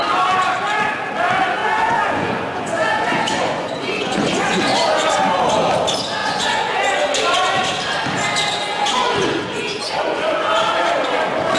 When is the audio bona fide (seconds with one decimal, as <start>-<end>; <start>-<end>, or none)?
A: 0.0-1.6; 4.6-6.2; 6.8-8.7; 10.5-11.6